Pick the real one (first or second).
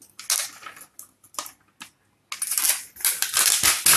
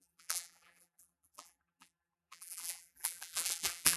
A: first